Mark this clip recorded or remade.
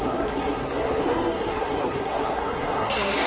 remade